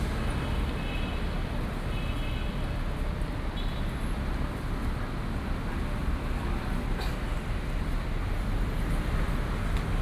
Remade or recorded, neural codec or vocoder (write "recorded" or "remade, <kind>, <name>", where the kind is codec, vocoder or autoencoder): recorded